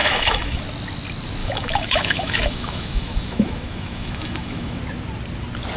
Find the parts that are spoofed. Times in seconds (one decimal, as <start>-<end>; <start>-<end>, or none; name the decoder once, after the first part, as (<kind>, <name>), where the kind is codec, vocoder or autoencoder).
0.0-0.6 (autoencoder, DAC-VAE); 1.4-4.8